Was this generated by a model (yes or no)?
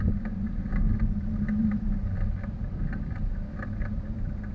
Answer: no